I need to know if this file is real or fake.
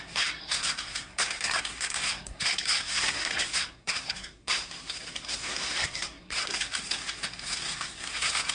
fake